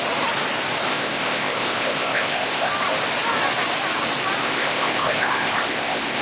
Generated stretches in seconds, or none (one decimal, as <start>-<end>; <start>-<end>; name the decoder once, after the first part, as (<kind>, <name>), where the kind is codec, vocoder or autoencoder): 0.9-2.7 (codec, ZipCodec); 4.4-6.2